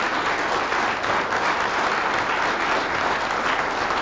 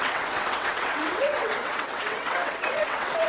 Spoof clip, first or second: second